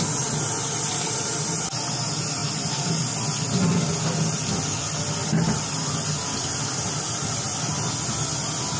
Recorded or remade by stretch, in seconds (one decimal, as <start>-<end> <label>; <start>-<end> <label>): 0.0-8.8 recorded